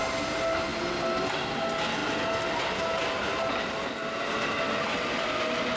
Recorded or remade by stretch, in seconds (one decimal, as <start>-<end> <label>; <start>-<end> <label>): 0.0-5.8 recorded